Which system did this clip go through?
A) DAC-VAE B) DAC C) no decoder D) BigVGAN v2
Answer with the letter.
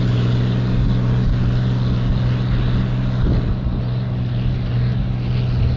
C